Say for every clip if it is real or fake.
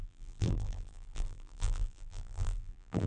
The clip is fake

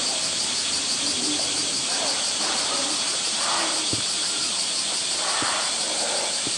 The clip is fake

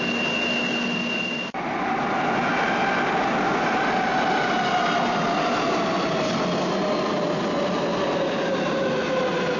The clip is real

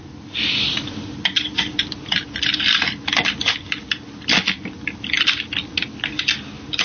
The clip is real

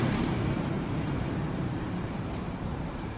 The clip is fake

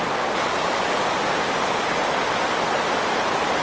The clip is real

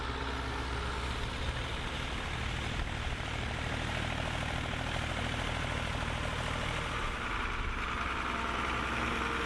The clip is real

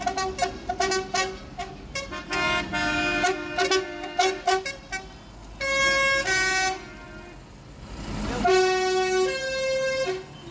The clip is real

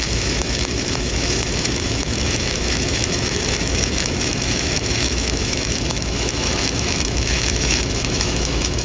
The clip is fake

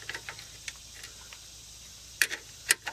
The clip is fake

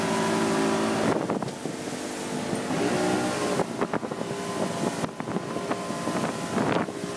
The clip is real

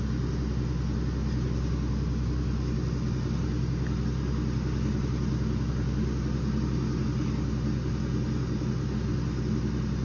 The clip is real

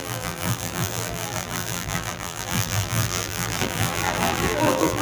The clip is fake